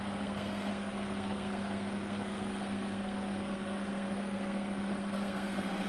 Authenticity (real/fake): fake